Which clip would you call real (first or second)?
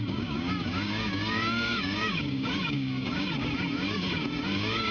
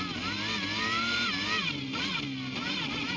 second